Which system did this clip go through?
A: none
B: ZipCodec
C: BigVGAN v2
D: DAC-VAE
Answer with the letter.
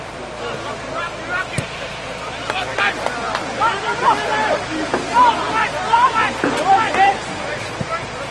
C